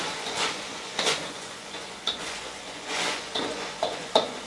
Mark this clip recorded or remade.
remade